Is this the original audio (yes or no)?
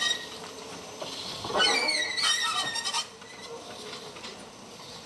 no